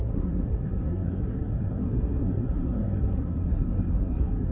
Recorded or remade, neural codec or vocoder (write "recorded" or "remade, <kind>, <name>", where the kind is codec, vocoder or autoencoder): remade, codec, SNAC